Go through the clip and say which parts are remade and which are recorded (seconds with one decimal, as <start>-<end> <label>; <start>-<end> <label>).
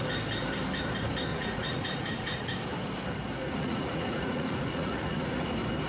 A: 0.0-1.3 recorded; 1.3-2.5 remade; 2.5-3.4 recorded; 3.4-5.5 remade; 5.5-5.9 recorded